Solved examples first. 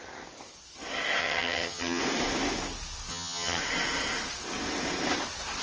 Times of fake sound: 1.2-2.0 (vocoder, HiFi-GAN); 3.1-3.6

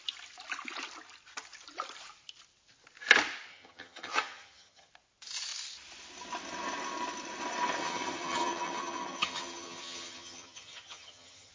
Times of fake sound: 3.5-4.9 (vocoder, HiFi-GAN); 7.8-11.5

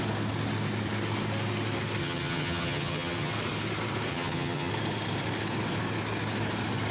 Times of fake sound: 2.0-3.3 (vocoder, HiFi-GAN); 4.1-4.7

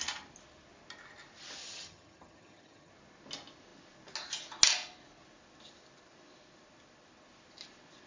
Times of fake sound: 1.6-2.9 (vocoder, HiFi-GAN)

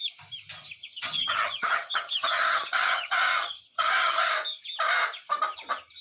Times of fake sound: 0.8-4.3 (vocoder, HiFi-GAN)

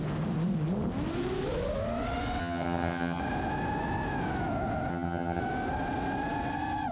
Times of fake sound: 2.4-3.2 (vocoder, HiFi-GAN); 4.9-5.4